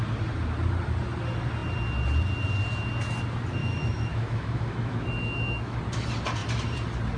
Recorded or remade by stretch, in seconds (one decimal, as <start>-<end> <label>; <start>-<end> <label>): 0.0-3.6 recorded; 3.6-5.8 remade; 5.8-7.2 recorded